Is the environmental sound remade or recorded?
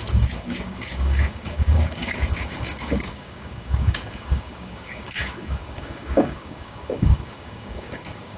remade